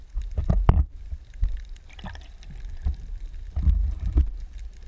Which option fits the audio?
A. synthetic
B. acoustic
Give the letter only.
A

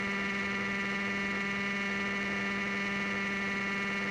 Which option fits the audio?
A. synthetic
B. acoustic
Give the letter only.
B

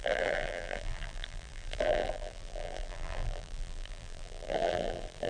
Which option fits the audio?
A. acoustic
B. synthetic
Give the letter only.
B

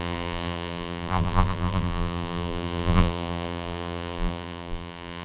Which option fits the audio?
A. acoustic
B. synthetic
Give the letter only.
B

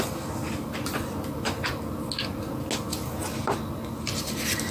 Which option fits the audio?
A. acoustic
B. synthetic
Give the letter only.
A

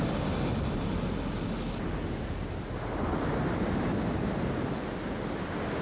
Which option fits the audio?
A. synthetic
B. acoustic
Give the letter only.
B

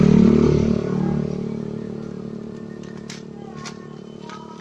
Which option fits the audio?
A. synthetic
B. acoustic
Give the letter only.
B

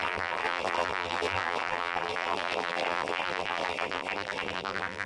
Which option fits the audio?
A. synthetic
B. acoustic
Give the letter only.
A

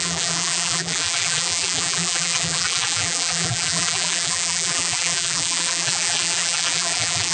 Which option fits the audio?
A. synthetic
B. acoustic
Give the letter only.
A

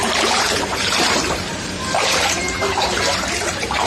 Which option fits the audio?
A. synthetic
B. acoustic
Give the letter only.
A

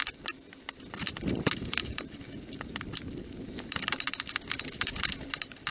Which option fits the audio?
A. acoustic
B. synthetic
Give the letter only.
A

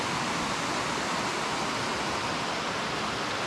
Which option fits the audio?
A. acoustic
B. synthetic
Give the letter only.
A